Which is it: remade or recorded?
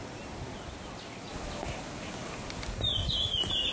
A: recorded